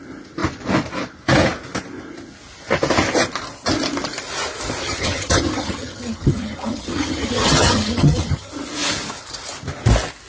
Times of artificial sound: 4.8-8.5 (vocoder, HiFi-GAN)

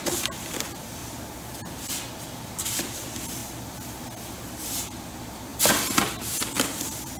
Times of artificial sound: 0.0-1.0 (vocoder, BigVGAN v2); 2.2-3.4; 4.3-7.2

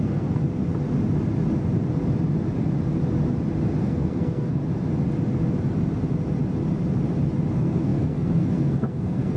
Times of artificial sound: 0.0-0.4 (codec, SNAC); 3.8-4.6; 7.5-9.4

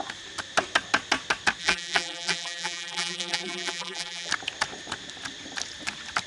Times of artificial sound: 1.6-4.3 (vocoder, BigVGAN v2)

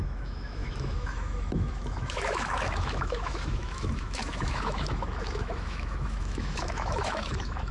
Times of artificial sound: 0.0-7.7 (autoencoder, DAC-VAE)

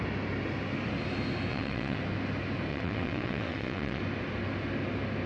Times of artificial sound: 1.5-2.0 (vocoder, WaveNeXt); 2.7-4.0

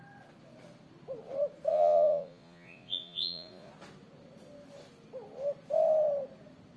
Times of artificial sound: 1.7-3.7 (vocoder, Vocos)